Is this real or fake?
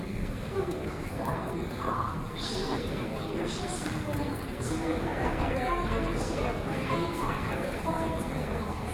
fake